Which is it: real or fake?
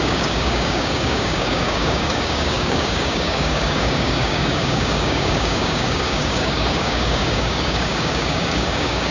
fake